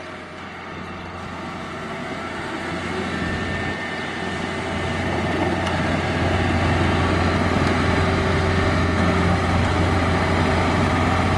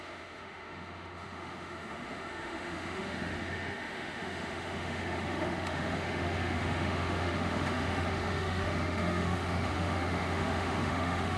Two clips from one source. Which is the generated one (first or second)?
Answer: second